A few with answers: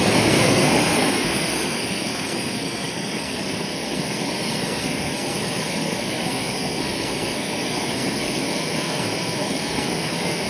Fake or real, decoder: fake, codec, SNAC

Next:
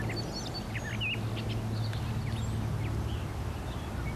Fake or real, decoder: real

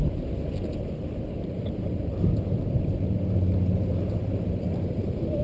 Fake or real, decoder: real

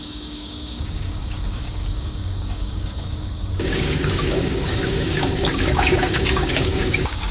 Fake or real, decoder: fake, codec, DAC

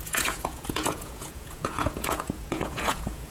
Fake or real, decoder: fake, vocoder, Vocos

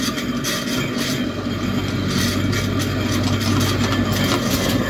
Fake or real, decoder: real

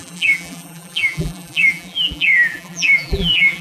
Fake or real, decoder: fake, vocoder, BigVGAN v2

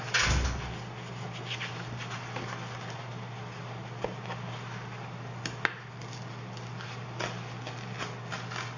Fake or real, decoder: real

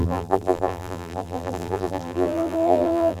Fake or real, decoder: fake, vocoder, BigVGAN v2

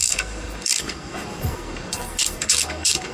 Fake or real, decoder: fake, codec, SNAC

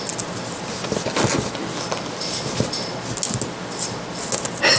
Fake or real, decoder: real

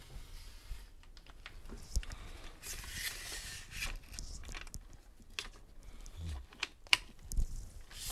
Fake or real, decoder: real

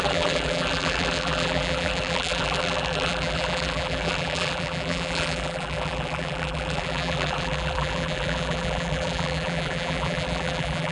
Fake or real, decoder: fake, vocoder, BigVGAN v2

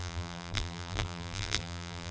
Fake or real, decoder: fake, vocoder, BigVGAN v2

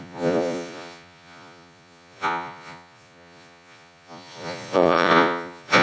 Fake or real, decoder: fake, vocoder, Vocos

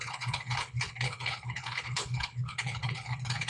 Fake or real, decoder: fake, codec, HILCodec